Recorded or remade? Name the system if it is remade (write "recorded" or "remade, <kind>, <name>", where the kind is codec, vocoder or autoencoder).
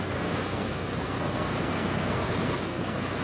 remade, codec, SNAC